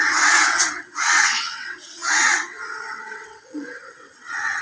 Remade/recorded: remade